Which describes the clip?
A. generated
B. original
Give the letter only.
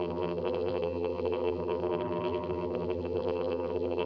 A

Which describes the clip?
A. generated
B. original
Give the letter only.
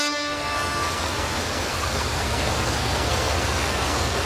A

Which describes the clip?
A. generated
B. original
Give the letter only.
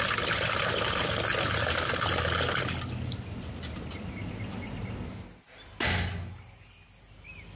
B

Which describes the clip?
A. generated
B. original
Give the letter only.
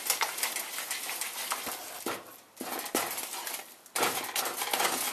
B